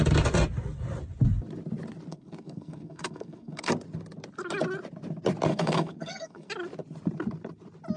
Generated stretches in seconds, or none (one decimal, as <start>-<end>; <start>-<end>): 2.1-3.7; 5.5-6.5